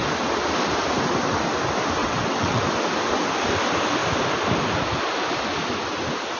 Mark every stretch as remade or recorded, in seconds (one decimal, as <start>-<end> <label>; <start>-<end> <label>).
0.0-2.0 recorded; 2.0-2.6 remade; 2.6-6.4 recorded